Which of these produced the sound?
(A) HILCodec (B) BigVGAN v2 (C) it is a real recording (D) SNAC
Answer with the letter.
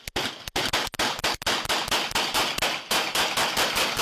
C